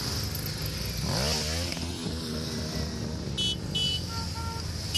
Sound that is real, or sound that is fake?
real